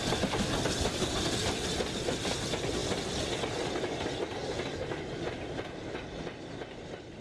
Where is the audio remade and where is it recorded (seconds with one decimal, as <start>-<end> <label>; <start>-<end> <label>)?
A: 0.0-7.2 recorded